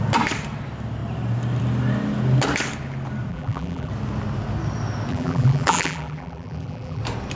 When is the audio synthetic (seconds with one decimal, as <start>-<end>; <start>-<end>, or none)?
3.3-3.9; 5.1-7.0